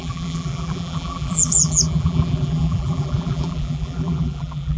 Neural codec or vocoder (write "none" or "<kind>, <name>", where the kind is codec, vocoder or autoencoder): vocoder, BigVGAN v2